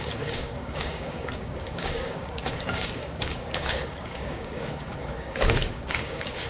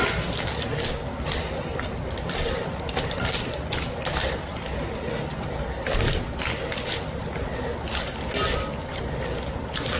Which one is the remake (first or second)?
first